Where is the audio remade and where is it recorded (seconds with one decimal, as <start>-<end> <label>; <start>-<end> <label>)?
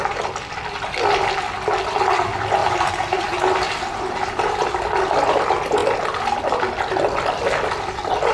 0.0-2.6 recorded; 2.6-4.7 remade; 4.7-8.3 recorded